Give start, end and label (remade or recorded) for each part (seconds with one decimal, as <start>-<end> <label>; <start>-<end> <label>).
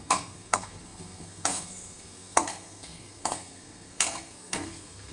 0.0-5.1 remade